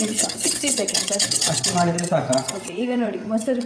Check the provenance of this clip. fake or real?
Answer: fake